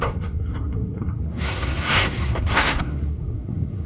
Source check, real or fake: fake